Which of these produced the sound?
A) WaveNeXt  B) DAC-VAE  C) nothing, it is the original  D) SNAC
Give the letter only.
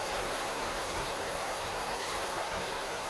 D